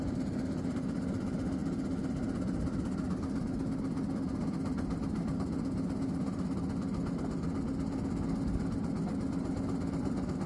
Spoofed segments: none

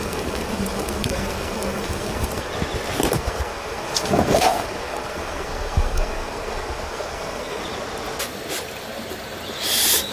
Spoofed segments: 0.0-2.5 (codec, SNAC); 3.1-7.6